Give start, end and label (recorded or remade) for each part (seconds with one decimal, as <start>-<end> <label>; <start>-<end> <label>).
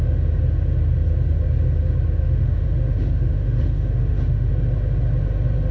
0.0-2.2 recorded; 2.2-4.5 remade; 4.5-5.7 recorded